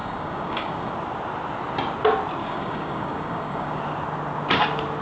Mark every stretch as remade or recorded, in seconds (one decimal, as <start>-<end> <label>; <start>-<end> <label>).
0.0-0.9 remade; 0.9-2.4 recorded; 2.4-3.8 remade; 3.8-5.0 recorded